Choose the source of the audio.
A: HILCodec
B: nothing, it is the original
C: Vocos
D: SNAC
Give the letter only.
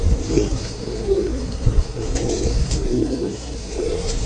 D